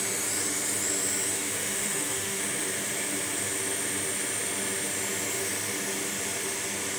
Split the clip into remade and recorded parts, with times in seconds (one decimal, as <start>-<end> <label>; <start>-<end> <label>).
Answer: 0.0-1.3 recorded; 1.3-2.4 remade; 2.4-7.0 recorded